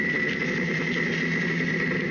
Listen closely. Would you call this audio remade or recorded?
recorded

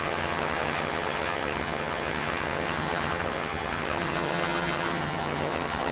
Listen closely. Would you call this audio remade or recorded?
remade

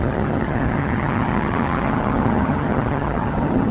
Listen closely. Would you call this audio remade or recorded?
remade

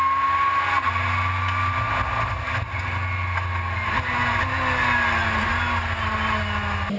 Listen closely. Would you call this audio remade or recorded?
recorded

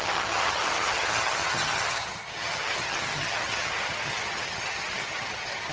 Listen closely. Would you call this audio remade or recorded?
remade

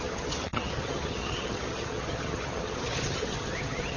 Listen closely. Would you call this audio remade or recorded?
remade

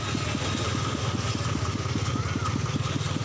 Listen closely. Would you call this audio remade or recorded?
recorded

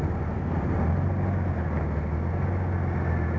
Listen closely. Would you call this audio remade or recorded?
recorded